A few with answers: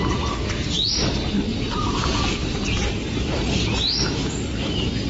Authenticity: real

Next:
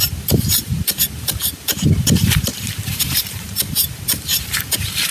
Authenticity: fake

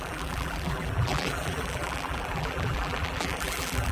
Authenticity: fake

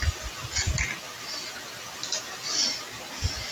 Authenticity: real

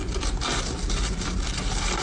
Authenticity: fake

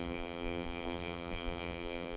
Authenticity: fake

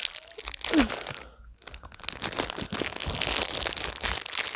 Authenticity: real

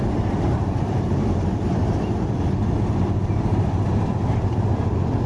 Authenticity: fake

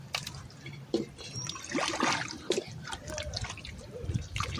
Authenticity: real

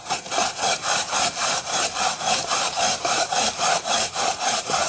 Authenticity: fake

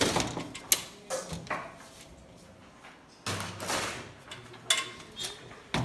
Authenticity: real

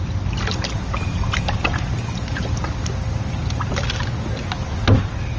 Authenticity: real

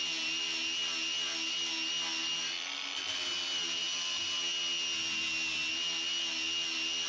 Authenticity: real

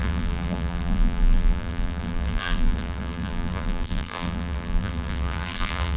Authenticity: fake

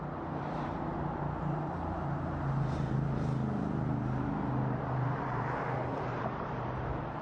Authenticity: fake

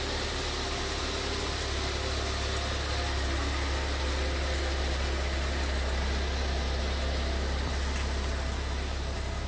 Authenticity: real